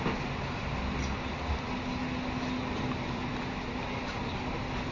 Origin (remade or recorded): recorded